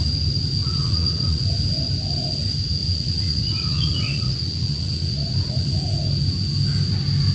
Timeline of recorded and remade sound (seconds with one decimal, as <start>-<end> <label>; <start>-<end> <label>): 0.0-0.6 recorded; 0.6-1.5 remade; 1.5-2.8 recorded; 2.8-5.8 remade; 5.8-7.3 recorded